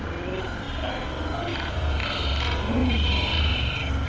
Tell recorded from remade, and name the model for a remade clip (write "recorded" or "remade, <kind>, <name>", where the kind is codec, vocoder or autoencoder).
recorded